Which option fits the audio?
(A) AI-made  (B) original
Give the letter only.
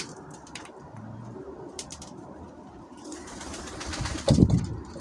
A